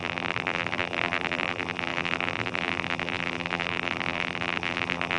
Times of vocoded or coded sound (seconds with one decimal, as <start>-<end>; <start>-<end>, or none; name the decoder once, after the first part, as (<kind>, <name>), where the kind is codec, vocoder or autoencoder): 0.0-5.2 (vocoder, BigVGAN v2)